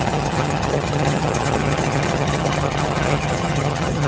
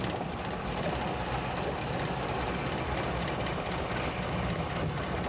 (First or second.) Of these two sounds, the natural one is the second